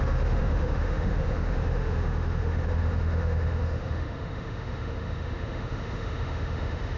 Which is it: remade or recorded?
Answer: remade